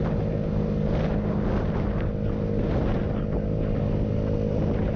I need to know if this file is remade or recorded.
recorded